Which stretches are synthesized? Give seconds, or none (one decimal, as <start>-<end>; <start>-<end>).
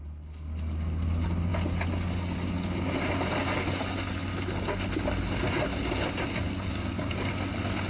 none